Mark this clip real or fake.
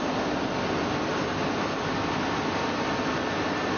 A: real